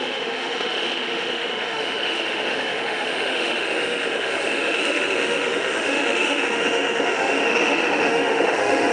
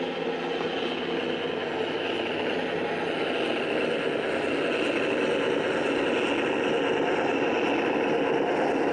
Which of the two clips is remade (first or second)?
first